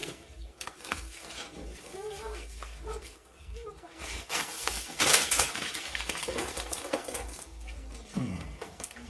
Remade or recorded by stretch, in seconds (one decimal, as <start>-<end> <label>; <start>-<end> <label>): 0.0-9.1 remade